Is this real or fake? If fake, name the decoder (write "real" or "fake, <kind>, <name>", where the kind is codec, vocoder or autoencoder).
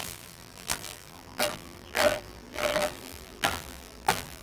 fake, vocoder, BigVGAN v2